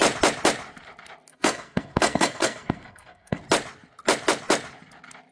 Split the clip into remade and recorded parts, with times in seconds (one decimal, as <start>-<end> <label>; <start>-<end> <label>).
0.0-1.3 recorded; 1.3-3.4 remade; 3.4-5.3 recorded